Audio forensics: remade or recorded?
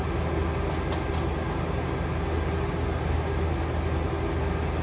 recorded